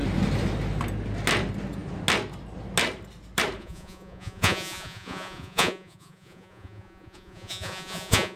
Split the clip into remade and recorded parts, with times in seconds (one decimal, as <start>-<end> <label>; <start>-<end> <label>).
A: 0.0-3.6 recorded; 3.6-8.4 remade